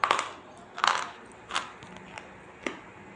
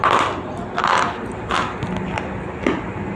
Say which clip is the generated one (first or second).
second